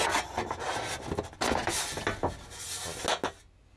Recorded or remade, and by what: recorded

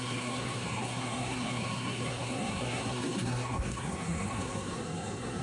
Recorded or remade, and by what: remade, codec, SNAC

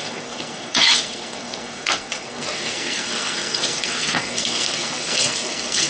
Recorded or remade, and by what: remade, codec, SNAC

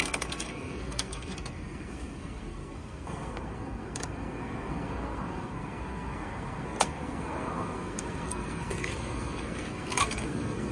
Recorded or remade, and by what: remade, codec, SNAC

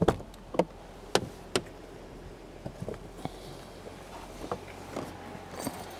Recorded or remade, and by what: recorded